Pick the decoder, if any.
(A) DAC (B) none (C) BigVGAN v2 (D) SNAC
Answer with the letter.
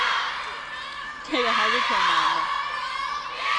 B